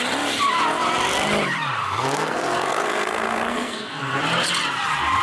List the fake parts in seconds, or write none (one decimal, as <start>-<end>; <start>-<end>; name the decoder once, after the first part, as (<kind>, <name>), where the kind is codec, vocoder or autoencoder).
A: 1.8-4.2 (codec, SNAC)